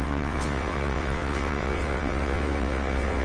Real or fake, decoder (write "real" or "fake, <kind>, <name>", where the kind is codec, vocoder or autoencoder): fake, vocoder, WaveNeXt